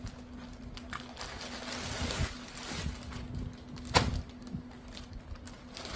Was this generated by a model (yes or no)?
no